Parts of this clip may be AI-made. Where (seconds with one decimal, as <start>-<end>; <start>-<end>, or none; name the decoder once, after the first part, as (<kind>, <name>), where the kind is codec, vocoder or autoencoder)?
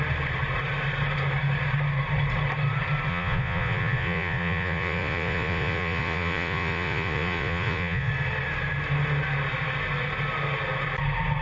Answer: 3.1-8.1 (vocoder, Vocos)